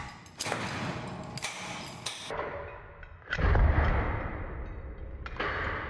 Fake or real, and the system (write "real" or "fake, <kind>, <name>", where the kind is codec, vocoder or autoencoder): real